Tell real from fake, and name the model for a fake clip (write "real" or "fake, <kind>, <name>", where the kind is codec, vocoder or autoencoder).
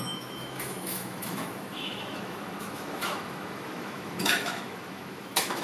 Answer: fake, autoencoder, DAC-VAE